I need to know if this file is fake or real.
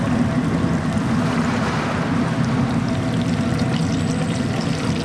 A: real